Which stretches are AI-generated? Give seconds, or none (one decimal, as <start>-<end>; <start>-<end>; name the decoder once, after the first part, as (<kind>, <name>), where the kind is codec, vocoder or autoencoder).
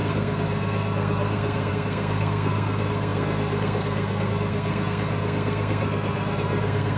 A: 0.0-7.0 (codec, SNAC)